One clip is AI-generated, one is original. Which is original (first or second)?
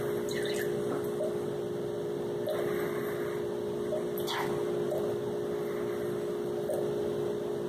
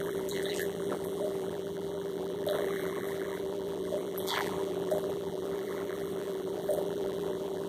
first